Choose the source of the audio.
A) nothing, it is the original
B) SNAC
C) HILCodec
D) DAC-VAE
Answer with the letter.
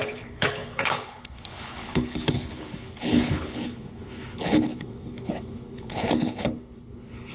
C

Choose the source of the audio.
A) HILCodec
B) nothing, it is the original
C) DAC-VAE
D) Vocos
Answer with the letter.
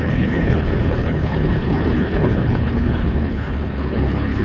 A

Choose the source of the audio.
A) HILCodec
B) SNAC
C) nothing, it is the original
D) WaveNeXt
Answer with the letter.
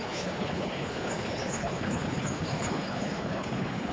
A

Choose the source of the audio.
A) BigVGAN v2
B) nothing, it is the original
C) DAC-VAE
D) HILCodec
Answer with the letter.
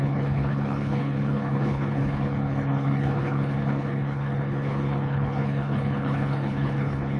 D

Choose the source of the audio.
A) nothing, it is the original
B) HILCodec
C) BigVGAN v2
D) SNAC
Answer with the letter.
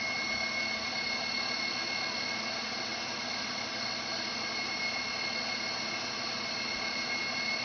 A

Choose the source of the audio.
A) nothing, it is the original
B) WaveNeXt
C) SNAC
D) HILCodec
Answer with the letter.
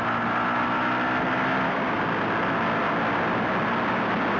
A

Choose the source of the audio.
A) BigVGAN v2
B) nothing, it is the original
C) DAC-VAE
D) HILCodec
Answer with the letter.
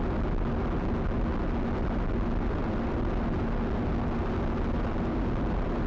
B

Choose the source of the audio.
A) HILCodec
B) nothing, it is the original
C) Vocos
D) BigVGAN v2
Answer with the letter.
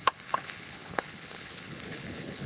A